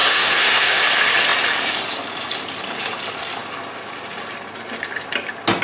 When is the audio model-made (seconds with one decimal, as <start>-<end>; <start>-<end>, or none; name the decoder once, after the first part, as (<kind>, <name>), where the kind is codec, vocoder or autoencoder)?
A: 0.0-0.8 (codec, SNAC)

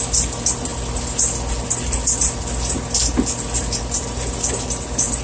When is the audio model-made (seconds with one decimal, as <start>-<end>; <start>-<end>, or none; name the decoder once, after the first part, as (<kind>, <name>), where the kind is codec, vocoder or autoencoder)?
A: none